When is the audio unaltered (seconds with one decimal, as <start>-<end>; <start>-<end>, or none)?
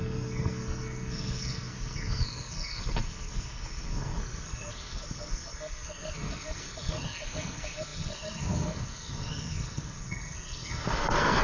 none